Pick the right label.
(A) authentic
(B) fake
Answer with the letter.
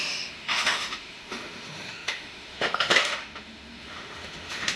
B